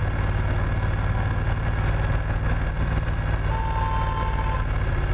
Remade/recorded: recorded